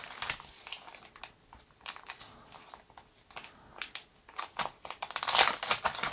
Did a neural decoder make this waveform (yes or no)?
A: no